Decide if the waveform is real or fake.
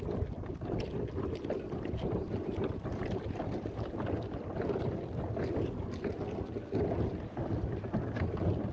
real